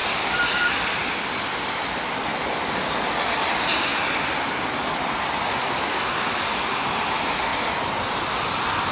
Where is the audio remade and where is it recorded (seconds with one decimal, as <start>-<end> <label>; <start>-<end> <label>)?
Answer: 0.0-8.9 recorded